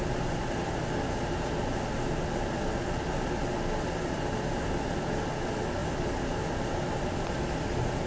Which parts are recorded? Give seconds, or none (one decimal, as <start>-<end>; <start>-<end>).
0.0-8.1